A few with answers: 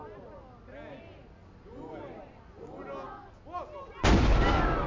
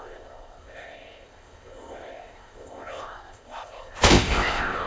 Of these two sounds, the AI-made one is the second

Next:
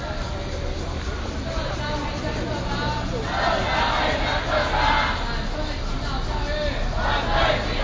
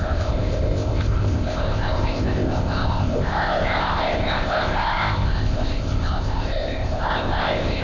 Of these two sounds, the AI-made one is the second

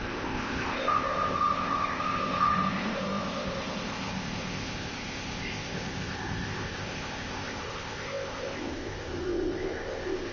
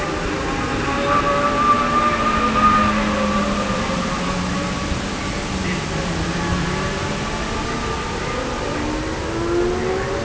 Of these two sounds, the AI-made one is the first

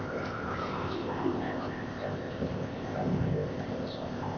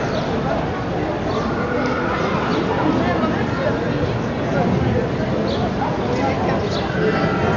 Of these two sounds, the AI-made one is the first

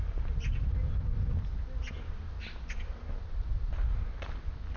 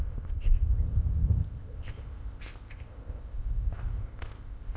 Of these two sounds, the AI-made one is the second